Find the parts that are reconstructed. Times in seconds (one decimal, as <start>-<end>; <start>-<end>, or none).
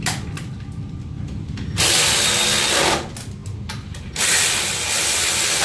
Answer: none